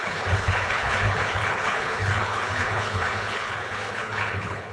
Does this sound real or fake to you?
fake